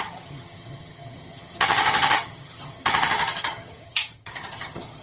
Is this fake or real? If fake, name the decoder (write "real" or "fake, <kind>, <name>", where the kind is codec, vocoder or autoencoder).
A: fake, vocoder, HiFi-GAN